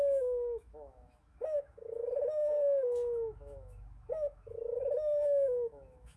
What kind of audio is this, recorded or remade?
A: remade